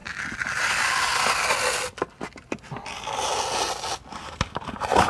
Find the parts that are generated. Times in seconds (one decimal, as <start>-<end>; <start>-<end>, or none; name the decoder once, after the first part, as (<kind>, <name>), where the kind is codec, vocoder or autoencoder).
none